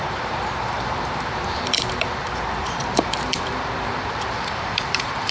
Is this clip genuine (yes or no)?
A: no